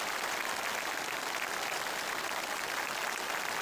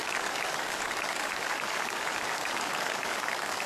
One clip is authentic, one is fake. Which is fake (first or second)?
second